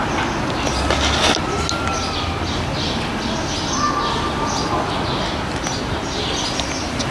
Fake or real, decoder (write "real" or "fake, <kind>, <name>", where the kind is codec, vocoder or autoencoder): real